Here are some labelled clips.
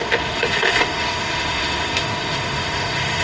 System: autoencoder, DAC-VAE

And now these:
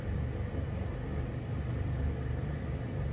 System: none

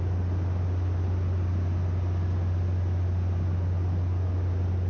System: none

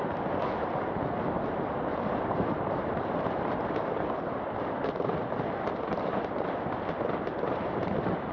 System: none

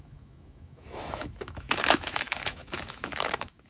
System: autoencoder, DAC-VAE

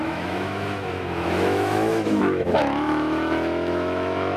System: autoencoder, DAC-VAE